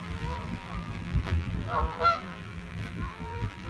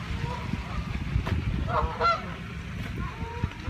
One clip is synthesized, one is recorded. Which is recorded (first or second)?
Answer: second